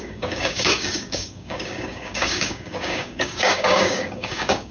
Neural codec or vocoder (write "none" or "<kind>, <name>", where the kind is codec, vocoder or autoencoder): codec, DAC